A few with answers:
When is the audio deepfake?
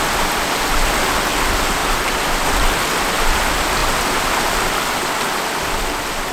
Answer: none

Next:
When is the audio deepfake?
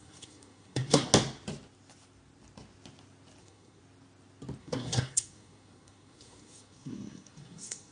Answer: 0.0-1.1 (codec, SNAC); 3.4-3.8; 4.6-7.9